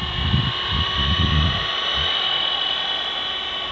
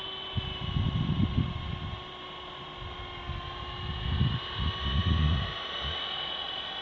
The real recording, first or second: second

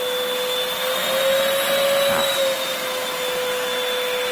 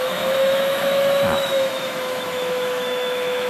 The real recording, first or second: first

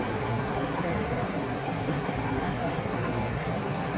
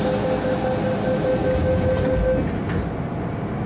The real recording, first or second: second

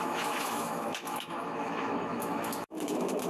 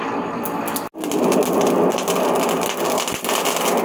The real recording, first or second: second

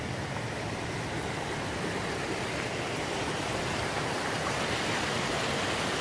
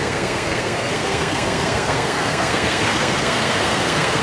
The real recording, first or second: first